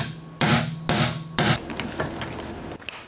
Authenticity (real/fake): real